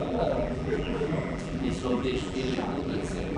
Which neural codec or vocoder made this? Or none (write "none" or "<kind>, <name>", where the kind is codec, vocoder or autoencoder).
vocoder, BigVGAN v2